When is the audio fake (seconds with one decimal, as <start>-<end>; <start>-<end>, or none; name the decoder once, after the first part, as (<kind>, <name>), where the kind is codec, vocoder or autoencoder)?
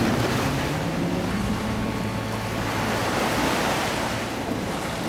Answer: 0.0-2.2 (vocoder, BigVGAN v2); 3.0-4.5